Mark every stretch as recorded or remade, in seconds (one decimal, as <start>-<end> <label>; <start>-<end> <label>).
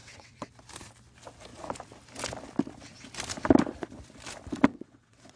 0.0-0.5 remade; 0.5-4.7 recorded; 4.7-5.4 remade